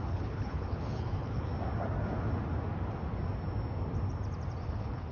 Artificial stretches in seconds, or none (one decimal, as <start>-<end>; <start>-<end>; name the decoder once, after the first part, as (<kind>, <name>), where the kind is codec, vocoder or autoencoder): 0.0-1.5 (codec, HILCodec); 4.6-5.1